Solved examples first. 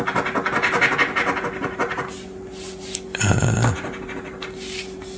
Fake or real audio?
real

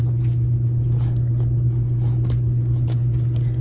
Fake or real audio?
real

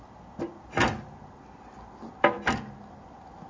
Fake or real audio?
fake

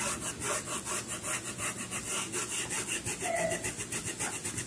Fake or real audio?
real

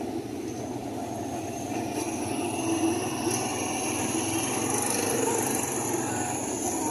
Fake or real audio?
real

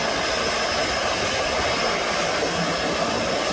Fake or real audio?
real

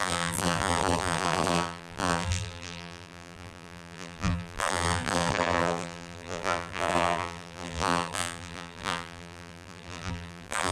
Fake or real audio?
fake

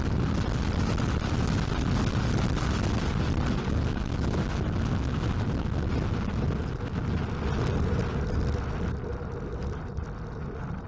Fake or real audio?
real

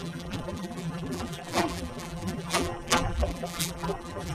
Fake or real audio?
fake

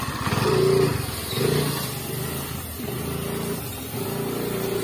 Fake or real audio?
real